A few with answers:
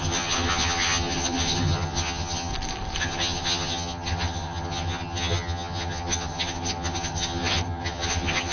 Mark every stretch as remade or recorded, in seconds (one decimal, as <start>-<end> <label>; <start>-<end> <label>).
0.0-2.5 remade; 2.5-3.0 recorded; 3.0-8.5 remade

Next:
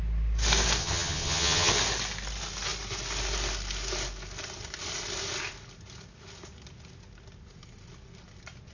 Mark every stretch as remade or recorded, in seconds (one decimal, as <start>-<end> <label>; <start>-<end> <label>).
0.0-0.8 recorded; 0.8-1.7 remade; 1.7-8.7 recorded

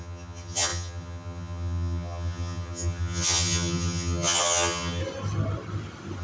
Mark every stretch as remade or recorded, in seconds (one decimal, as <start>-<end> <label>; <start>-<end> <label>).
0.0-5.0 remade; 5.0-6.2 recorded

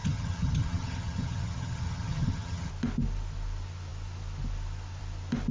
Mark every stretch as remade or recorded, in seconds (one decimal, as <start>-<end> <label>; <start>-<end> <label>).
0.0-2.7 remade; 2.7-5.5 recorded

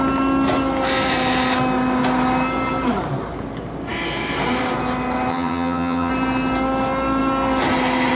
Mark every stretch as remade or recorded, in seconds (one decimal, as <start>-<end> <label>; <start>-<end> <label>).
0.0-5.3 recorded; 5.3-6.1 remade; 6.1-8.1 recorded

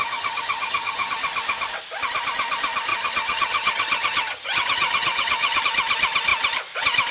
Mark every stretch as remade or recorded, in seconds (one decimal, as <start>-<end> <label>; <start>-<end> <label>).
0.0-1.1 remade; 1.1-2.9 recorded; 2.9-5.6 remade; 5.6-7.1 recorded